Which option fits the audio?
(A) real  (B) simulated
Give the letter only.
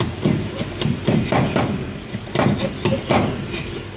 B